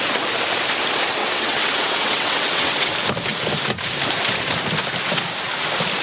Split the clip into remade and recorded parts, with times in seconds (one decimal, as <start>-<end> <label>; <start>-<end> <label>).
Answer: 0.0-1.2 recorded; 1.2-2.9 remade; 2.9-6.0 recorded